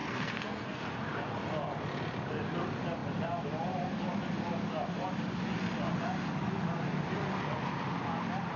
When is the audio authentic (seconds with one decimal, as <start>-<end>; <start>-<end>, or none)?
0.8-8.6